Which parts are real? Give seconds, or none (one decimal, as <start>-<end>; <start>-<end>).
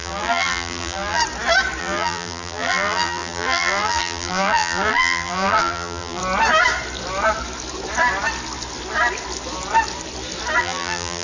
1.2-1.8; 6.2-10.6